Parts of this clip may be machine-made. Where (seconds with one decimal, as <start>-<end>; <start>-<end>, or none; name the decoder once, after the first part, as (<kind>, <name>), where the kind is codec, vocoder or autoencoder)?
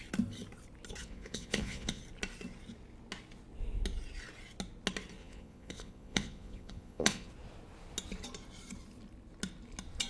1.0-2.0 (vocoder, Vocos); 5.2-7.3